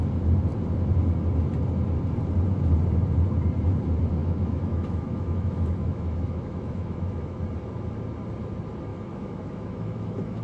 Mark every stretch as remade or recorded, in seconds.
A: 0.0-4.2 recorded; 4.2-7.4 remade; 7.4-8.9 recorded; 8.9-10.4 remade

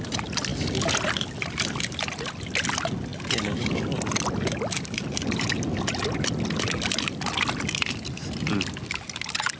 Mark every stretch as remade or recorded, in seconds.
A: 0.0-9.6 recorded

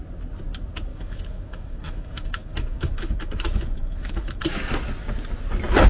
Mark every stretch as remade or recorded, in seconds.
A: 0.0-0.9 recorded; 0.9-4.4 remade; 4.4-5.9 recorded

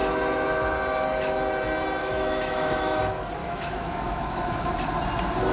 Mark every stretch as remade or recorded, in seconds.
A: 0.0-2.0 recorded; 2.0-3.0 remade; 3.0-3.4 recorded; 3.4-4.7 remade; 4.7-5.5 recorded